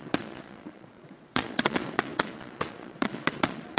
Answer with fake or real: fake